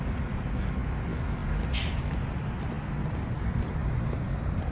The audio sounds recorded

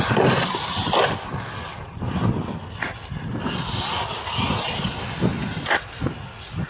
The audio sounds recorded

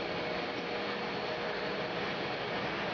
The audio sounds recorded